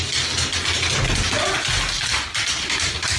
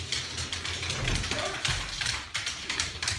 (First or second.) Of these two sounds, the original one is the first